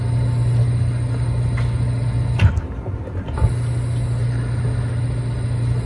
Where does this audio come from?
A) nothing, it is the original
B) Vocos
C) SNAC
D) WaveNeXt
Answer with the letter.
A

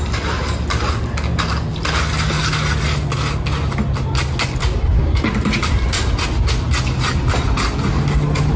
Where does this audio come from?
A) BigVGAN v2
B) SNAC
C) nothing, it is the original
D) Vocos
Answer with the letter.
C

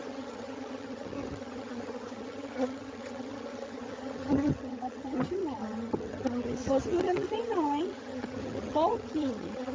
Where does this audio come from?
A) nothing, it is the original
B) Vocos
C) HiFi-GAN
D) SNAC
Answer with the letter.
C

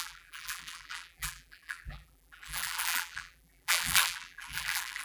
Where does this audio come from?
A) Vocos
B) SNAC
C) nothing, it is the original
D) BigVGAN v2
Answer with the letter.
D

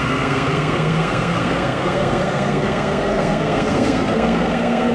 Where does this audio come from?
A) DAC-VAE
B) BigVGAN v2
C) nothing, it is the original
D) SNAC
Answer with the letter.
D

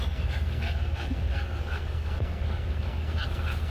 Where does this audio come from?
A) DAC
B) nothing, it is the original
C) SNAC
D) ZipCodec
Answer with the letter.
C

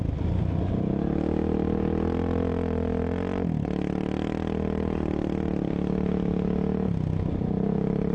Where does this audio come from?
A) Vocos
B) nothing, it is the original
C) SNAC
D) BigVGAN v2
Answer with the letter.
B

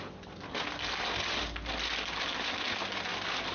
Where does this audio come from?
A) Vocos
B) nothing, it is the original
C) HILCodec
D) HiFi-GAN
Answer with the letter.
B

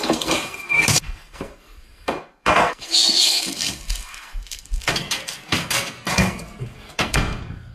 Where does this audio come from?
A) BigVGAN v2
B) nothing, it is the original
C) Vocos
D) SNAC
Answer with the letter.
D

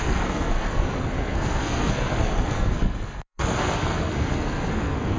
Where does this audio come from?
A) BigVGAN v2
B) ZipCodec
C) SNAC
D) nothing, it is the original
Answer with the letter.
C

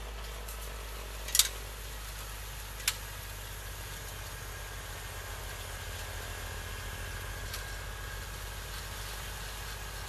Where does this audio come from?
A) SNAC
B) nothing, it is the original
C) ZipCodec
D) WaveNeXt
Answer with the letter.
B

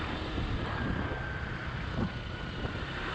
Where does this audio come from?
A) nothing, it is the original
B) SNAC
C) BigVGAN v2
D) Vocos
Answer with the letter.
C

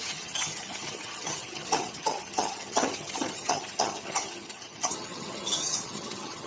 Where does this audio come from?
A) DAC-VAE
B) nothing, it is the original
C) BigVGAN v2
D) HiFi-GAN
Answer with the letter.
D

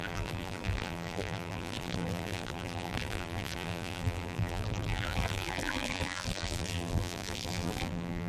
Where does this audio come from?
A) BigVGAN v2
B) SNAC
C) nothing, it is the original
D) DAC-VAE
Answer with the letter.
A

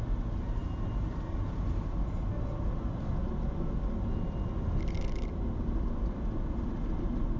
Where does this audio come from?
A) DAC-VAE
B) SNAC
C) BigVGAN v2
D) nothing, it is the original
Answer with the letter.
D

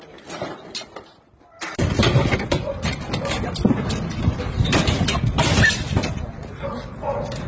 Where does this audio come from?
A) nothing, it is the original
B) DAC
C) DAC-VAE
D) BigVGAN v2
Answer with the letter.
D